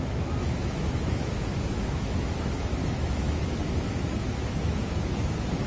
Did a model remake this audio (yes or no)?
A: yes